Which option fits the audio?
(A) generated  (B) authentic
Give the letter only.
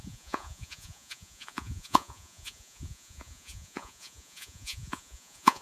A